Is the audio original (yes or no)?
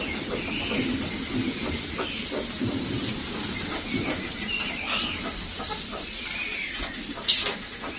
yes